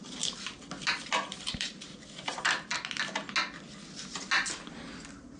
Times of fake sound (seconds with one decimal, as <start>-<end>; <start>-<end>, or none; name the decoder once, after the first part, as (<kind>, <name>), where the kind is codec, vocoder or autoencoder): 1.3-2.7 (vocoder, BigVGAN v2)